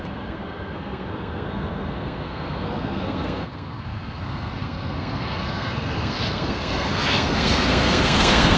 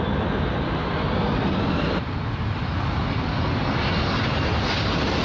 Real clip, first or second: second